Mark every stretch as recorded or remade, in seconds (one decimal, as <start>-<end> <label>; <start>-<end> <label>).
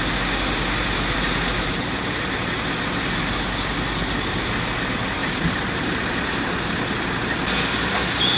0.0-5.2 recorded; 5.2-6.1 remade; 6.1-8.4 recorded